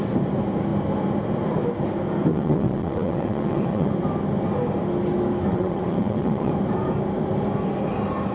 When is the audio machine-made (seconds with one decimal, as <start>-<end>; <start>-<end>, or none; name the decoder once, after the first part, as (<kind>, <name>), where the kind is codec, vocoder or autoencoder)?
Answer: 2.3-3.9 (vocoder, WaveNeXt); 5.5-6.5